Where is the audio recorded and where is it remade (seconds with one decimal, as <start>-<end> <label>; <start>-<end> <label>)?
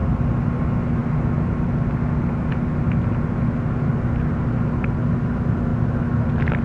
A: 0.0-6.6 recorded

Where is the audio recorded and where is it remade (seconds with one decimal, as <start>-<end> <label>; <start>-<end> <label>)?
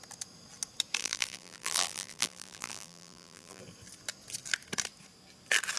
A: 0.0-1.0 recorded; 1.0-3.6 remade; 3.6-5.8 recorded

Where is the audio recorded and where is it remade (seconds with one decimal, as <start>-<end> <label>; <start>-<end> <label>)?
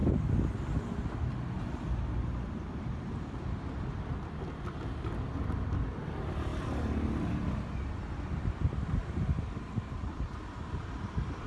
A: 0.0-2.8 recorded; 2.8-4.1 remade; 4.1-5.2 recorded; 5.2-6.5 remade; 6.5-8.2 recorded; 8.2-11.5 remade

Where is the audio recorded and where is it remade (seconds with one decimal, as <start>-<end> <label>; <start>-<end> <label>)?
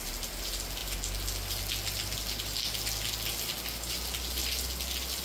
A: 0.0-5.2 recorded